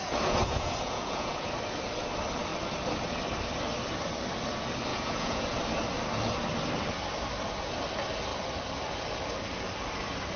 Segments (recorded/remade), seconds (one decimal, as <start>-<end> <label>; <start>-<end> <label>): 0.0-1.5 remade; 1.5-4.9 recorded; 4.9-5.6 remade; 5.6-10.4 recorded